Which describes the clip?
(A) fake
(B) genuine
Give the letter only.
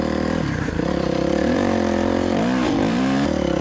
A